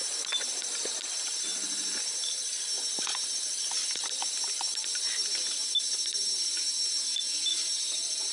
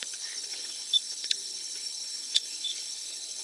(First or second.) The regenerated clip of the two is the second